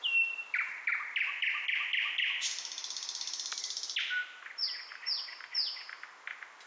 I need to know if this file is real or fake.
real